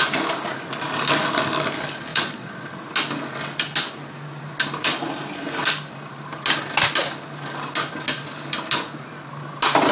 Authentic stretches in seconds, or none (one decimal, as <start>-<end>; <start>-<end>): 0.0-2.1; 2.7-9.9